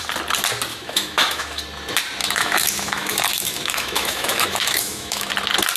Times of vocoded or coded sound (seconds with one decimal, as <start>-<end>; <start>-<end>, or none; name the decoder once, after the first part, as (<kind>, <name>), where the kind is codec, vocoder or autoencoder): 0.7-1.6 (autoencoder, DAC-VAE); 2.2-5.3